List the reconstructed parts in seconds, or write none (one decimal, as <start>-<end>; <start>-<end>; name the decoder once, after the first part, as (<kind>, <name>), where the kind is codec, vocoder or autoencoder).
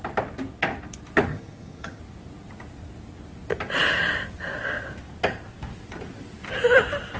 1.3-2.0 (vocoder, HiFi-GAN)